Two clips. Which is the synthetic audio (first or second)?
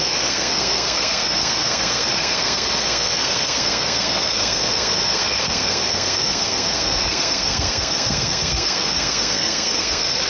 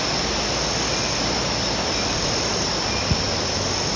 first